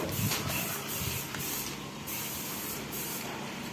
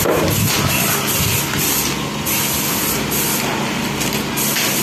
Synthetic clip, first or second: first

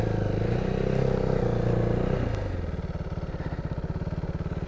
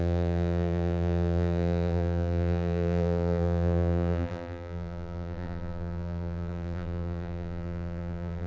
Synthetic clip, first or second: second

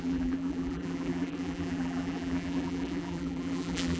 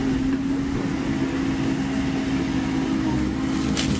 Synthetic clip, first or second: first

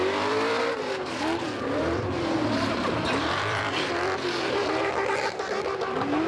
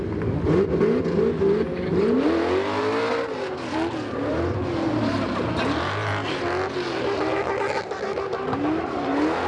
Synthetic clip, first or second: first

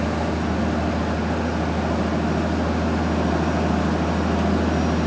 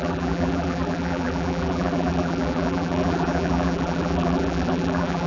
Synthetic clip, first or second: second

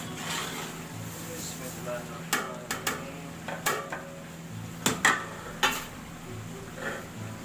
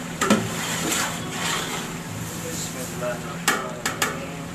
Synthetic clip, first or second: second